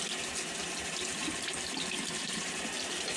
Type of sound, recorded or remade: remade